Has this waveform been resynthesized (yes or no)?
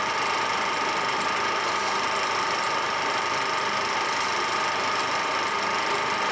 no